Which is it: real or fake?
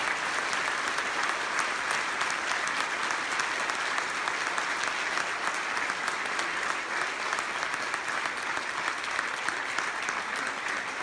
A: real